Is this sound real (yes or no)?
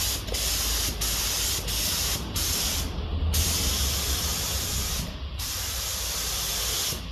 yes